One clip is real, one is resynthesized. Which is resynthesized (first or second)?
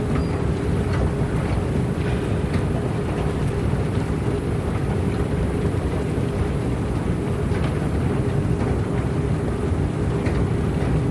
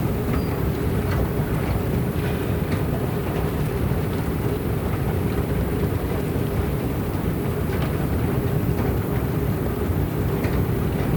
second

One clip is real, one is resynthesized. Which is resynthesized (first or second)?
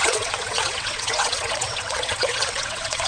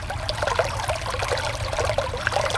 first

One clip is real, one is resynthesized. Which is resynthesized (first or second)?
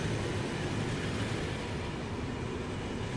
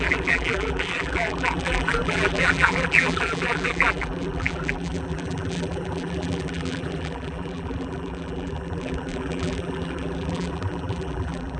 second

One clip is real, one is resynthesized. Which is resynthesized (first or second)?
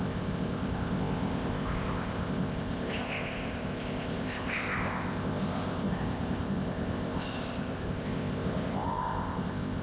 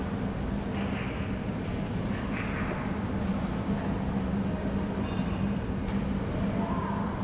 first